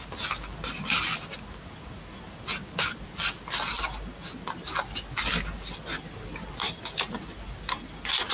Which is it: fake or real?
real